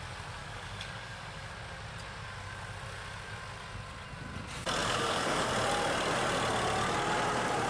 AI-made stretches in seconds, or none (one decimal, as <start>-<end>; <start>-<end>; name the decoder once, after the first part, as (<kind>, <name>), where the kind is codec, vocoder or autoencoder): 0.4-1.5 (codec, DAC); 4.8-5.5